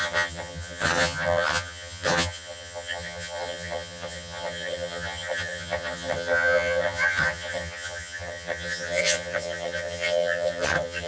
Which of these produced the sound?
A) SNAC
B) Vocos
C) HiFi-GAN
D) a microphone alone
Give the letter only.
C